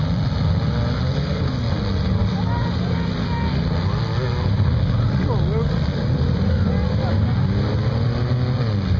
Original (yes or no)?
yes